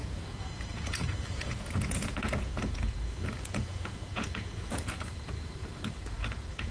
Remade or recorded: remade